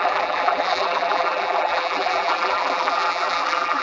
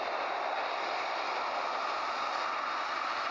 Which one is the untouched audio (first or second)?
second